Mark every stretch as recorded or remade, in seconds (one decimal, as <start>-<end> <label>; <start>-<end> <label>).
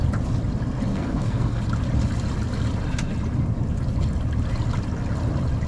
0.0-0.9 recorded; 0.9-1.6 remade; 1.6-5.7 recorded